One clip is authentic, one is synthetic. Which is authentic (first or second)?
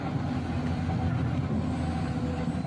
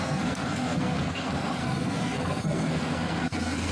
first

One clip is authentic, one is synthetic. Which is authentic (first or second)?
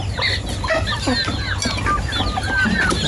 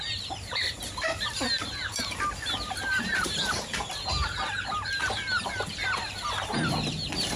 first